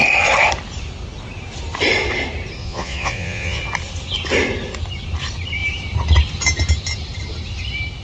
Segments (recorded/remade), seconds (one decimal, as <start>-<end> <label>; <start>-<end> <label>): 0.0-2.6 recorded; 2.6-3.6 remade; 3.6-8.0 recorded